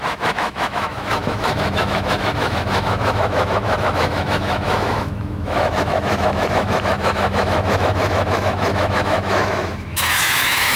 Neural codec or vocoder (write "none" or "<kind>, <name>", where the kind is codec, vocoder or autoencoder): autoencoder, DAC-VAE